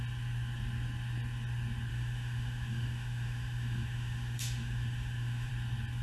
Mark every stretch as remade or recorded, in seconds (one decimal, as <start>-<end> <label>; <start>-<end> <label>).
0.0-1.9 recorded; 1.9-5.5 remade; 5.5-6.0 recorded